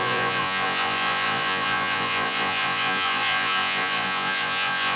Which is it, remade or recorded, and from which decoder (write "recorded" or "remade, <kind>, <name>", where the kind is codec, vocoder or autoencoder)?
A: remade, vocoder, Vocos